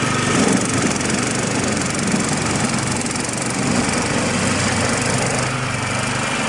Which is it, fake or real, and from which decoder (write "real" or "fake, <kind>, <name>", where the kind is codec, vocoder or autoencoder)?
real